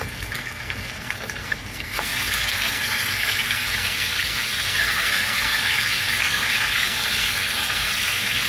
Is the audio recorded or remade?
remade